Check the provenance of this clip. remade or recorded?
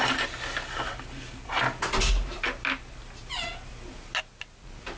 recorded